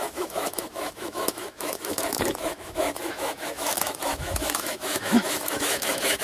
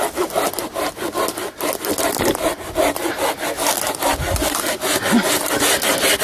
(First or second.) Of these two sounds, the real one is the second